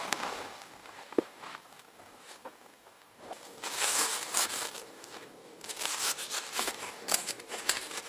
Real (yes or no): no